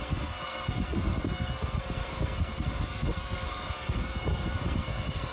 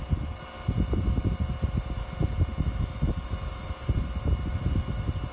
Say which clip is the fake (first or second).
first